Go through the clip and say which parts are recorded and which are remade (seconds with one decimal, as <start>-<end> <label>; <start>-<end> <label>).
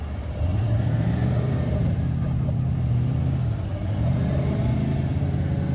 0.0-0.5 recorded; 0.5-2.8 remade; 2.8-3.7 recorded; 3.7-4.6 remade; 4.6-5.7 recorded